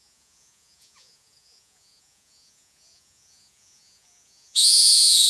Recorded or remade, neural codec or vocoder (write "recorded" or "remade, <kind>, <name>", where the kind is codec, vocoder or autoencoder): remade, vocoder, Vocos